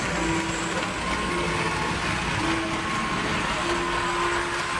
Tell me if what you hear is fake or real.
real